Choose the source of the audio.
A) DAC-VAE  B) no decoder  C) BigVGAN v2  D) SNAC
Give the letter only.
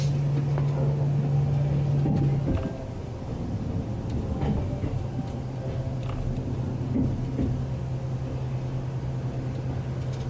B